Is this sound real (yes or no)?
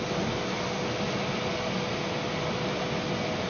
yes